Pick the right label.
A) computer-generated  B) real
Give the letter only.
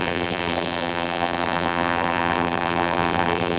A